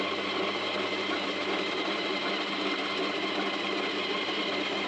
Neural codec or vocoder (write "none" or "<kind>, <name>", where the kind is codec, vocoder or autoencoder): none